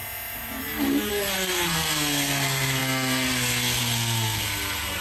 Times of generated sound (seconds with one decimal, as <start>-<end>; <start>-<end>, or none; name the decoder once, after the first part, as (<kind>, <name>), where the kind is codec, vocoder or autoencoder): 1.1-5.0 (codec, SNAC)